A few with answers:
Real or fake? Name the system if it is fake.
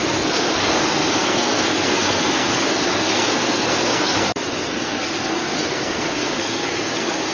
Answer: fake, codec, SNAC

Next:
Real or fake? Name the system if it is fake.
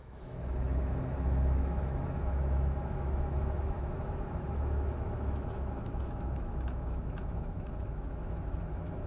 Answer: fake, autoencoder, DAC-VAE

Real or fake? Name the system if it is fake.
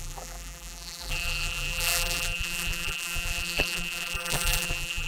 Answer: fake, vocoder, BigVGAN v2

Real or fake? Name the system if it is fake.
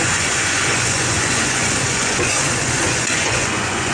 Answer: fake, vocoder, Vocos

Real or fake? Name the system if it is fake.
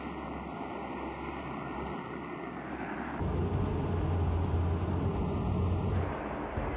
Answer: real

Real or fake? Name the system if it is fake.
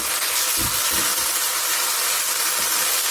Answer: real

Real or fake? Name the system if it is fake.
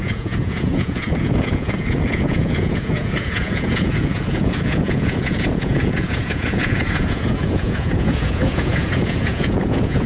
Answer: fake, vocoder, Vocos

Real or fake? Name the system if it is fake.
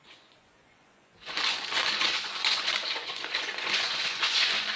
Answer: fake, vocoder, Vocos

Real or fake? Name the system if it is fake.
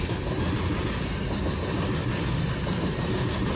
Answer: real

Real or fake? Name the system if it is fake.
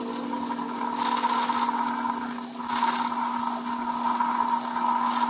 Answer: real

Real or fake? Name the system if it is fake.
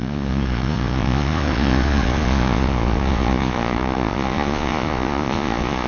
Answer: fake, vocoder, Vocos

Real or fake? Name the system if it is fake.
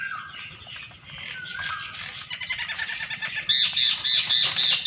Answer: real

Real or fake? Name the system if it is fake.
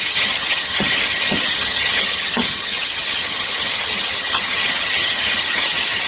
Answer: fake, vocoder, HiFi-GAN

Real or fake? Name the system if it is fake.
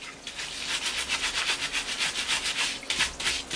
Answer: real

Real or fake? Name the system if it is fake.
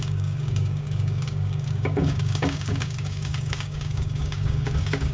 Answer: fake, codec, DAC